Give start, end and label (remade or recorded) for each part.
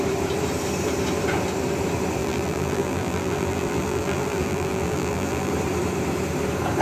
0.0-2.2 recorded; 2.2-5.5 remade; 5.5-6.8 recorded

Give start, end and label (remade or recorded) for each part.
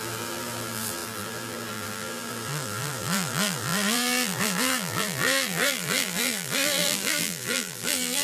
0.0-8.2 remade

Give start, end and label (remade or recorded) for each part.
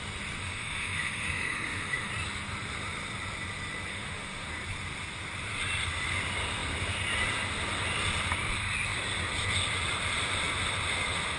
0.0-0.4 recorded; 0.4-2.1 remade; 2.1-3.9 recorded; 3.9-4.5 remade; 4.5-11.4 recorded